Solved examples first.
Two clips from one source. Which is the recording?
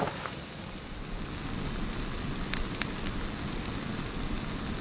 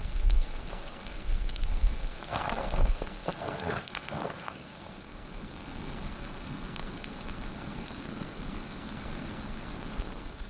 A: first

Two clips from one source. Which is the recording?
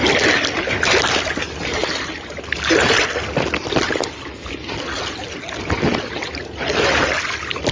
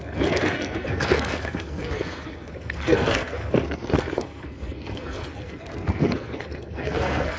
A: first